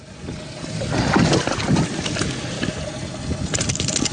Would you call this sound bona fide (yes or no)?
yes